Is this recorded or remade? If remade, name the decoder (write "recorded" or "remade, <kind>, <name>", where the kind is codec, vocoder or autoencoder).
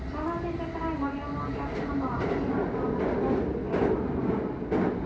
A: recorded